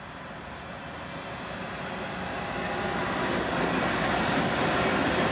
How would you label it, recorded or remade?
recorded